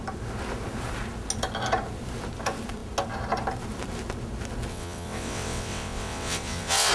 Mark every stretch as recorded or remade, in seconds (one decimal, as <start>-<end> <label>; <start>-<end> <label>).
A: 0.0-4.7 recorded; 4.7-6.9 remade